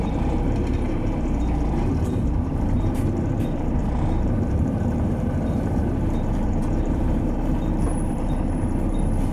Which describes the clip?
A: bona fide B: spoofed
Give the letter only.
B